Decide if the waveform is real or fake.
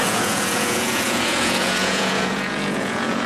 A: fake